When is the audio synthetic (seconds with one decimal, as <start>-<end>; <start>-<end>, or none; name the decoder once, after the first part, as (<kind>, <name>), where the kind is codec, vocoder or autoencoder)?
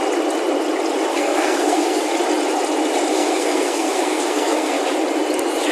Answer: 1.1-2.1 (codec, SNAC); 3.1-4.8